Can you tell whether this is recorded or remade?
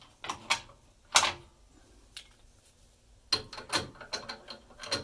recorded